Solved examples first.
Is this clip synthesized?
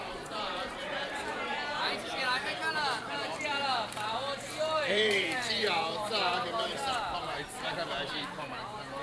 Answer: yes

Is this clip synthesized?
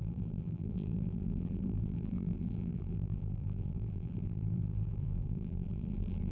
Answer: yes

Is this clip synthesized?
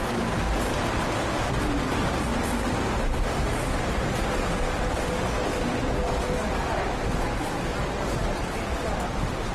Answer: no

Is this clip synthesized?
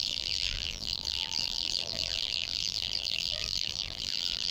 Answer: yes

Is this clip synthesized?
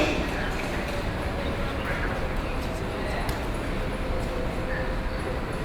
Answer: no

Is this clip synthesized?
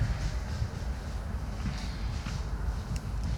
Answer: no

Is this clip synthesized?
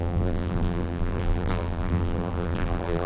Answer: yes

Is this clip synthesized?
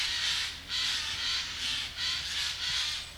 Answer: no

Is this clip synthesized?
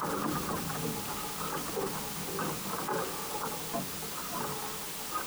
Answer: no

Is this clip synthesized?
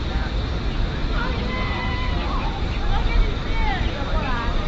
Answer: yes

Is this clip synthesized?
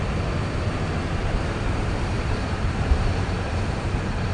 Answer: yes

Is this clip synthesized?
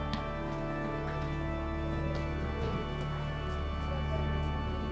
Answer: no